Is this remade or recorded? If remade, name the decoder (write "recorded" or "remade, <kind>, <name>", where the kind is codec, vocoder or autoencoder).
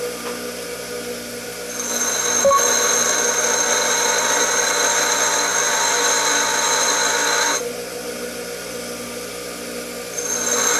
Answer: recorded